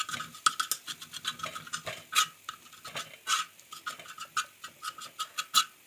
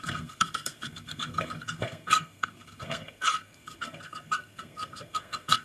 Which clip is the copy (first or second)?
second